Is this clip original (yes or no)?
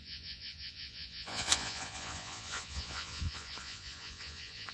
no